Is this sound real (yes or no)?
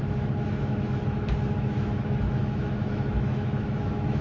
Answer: no